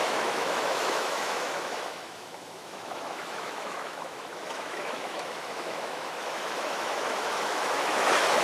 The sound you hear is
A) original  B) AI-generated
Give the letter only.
B